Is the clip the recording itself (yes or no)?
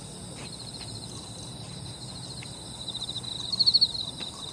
yes